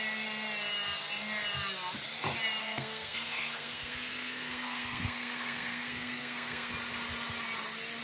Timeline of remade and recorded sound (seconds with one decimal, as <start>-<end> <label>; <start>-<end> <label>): 0.0-2.6 recorded; 2.6-6.7 remade; 6.7-8.0 recorded